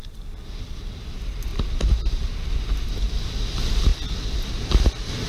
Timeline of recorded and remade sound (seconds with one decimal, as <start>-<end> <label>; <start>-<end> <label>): 0.0-1.5 recorded; 1.5-2.5 remade; 2.5-5.3 recorded